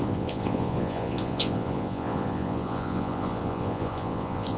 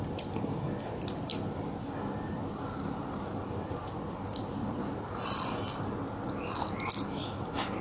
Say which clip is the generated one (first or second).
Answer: first